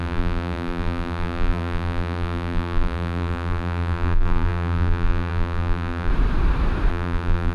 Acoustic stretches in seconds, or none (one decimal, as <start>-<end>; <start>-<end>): 6.1-6.9